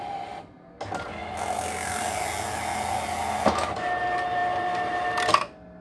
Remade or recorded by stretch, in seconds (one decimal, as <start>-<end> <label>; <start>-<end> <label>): 0.0-5.8 recorded